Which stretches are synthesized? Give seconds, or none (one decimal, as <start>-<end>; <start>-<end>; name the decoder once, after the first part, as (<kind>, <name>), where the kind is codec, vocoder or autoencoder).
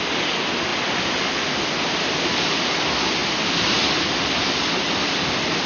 none